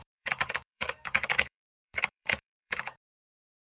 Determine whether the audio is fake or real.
fake